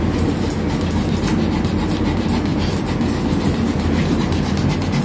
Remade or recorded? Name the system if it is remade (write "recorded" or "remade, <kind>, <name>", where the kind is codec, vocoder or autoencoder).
recorded